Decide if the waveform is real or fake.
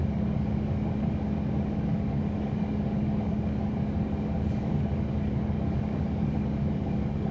fake